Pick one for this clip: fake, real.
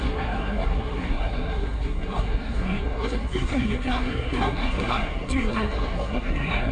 fake